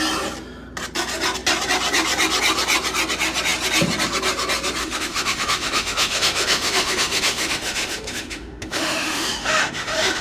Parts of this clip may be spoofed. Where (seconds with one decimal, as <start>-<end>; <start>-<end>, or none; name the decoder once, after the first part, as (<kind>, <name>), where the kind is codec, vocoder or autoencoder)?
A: 4.8-10.2 (autoencoder, DAC-VAE)